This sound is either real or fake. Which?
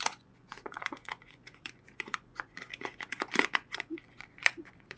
fake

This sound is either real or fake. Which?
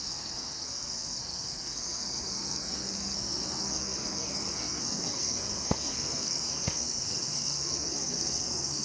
fake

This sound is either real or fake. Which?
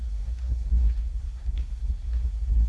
fake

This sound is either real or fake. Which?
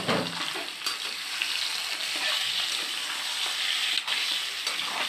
real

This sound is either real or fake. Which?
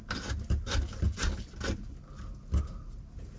real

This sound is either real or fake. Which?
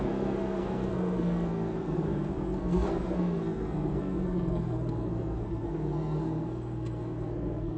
fake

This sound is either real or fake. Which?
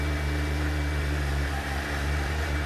real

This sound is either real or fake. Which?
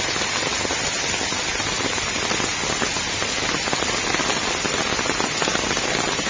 real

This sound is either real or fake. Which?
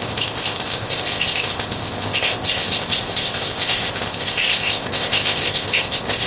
fake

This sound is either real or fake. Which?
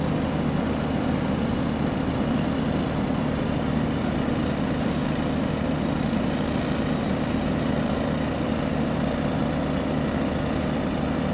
real